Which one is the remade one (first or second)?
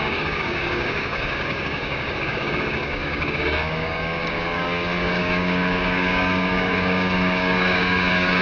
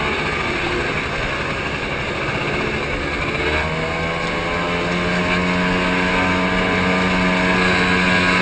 first